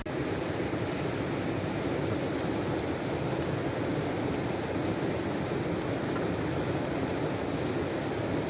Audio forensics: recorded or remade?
recorded